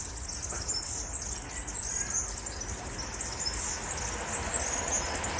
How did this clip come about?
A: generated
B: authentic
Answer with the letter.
B